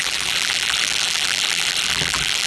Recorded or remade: remade